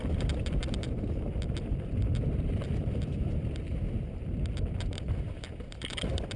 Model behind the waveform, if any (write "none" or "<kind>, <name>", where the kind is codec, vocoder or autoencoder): vocoder, BigVGAN v2